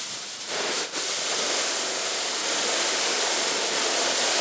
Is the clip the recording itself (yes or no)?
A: yes